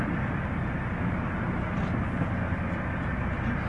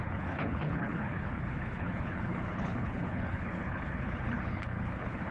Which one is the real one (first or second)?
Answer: first